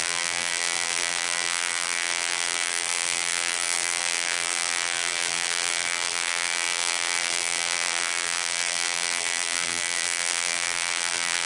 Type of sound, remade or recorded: remade